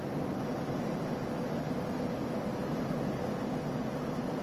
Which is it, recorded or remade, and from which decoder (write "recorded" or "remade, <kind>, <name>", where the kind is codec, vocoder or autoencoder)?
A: recorded